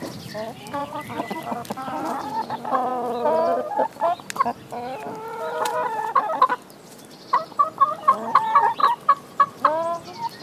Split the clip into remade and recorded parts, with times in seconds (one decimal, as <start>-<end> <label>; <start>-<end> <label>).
0.0-0.8 recorded; 0.8-2.3 remade; 2.3-8.8 recorded; 8.8-9.6 remade; 9.6-10.4 recorded